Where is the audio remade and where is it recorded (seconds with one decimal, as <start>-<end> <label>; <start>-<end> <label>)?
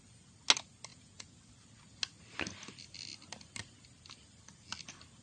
0.0-0.9 recorded; 0.9-1.4 remade; 1.4-5.2 recorded